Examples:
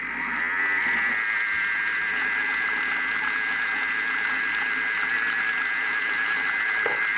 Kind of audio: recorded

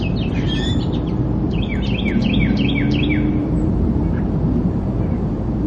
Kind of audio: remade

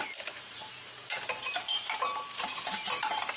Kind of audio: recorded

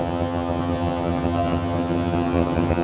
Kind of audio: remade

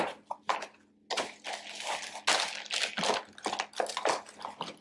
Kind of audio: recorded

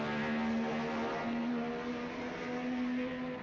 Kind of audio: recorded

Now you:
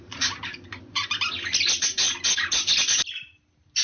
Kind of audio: recorded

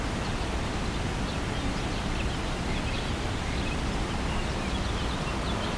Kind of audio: recorded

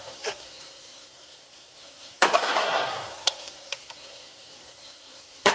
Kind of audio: remade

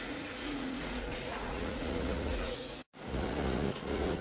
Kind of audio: remade